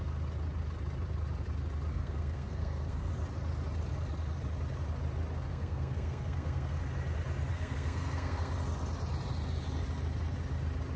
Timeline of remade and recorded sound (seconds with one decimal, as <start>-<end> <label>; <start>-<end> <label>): 0.0-1.9 recorded; 1.9-3.1 remade; 3.1-5.5 recorded; 5.5-6.8 remade; 6.8-7.5 recorded; 7.5-8.5 remade; 8.5-11.0 recorded